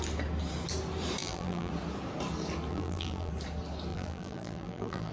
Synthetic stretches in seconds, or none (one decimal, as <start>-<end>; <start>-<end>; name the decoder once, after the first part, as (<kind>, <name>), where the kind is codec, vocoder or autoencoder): 1.2-1.7 (vocoder, BigVGAN v2); 2.7-3.3; 3.9-5.1